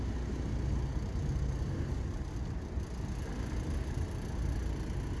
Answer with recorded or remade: recorded